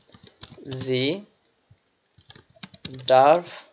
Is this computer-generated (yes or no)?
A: no